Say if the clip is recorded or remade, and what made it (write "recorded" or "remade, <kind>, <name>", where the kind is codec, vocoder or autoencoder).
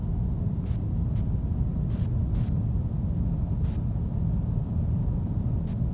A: recorded